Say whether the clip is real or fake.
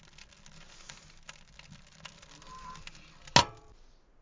real